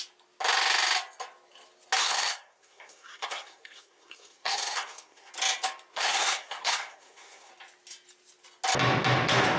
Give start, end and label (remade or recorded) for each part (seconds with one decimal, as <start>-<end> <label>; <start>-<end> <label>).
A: 0.0-2.0 recorded; 2.0-5.3 remade; 5.3-5.9 recorded; 5.9-7.5 remade; 7.5-9.6 recorded